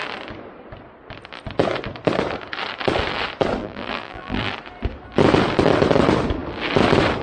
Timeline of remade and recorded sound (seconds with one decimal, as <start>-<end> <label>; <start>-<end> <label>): 0.0-3.6 recorded; 3.6-4.5 remade; 4.5-7.2 recorded